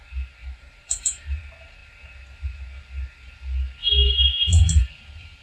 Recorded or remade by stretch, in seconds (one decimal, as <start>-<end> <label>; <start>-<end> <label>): 0.0-0.4 recorded; 0.4-1.4 remade; 1.4-5.4 recorded